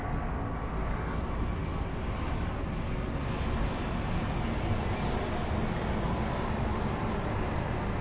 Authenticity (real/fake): real